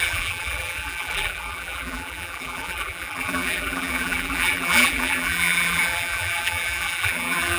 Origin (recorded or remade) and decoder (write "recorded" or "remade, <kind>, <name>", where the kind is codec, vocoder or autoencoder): remade, vocoder, BigVGAN v2